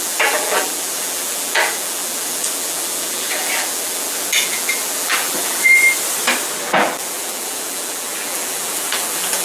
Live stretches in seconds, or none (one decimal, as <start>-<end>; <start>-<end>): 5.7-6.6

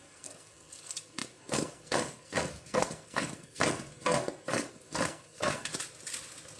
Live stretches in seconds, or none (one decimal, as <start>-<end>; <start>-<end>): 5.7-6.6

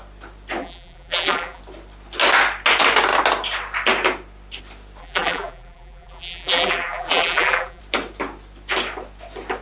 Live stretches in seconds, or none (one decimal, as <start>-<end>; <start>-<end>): 0.0-0.6; 1.6-5.0; 7.8-9.6

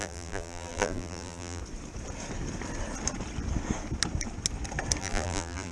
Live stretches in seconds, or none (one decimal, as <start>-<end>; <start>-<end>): 1.6-5.0

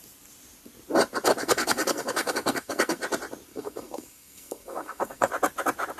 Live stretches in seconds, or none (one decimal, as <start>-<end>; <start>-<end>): 0.0-1.4; 3.0-3.5; 5.3-6.0

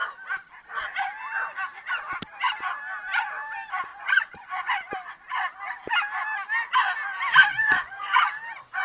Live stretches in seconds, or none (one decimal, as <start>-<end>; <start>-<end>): 0.0-3.9; 4.7-7.5; 8.2-8.8

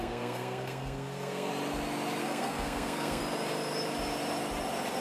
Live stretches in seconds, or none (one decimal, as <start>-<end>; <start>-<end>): 1.5-2.2; 3.2-5.0